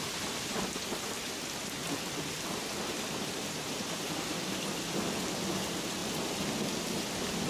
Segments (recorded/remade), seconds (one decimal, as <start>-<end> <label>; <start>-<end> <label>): 0.0-1.2 recorded; 1.2-4.7 remade; 4.7-7.5 recorded